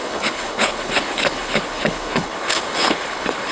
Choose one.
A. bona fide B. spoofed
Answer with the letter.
B